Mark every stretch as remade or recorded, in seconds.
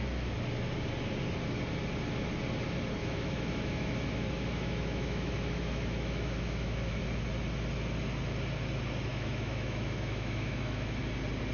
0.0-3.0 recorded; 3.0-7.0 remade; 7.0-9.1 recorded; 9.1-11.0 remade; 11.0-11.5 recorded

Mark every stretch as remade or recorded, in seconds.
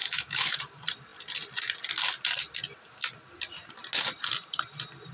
0.0-0.6 remade; 0.6-5.1 recorded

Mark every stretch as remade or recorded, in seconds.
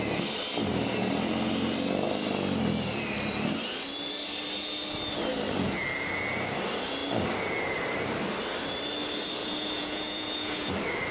0.0-9.4 recorded; 9.4-10.7 remade; 10.7-11.1 recorded